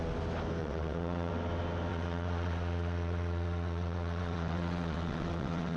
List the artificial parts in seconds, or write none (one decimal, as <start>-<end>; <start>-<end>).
0.6-1.3; 1.9-5.8